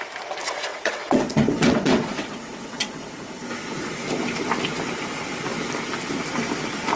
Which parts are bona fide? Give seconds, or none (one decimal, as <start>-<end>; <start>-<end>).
0.0-0.7; 3.1-7.0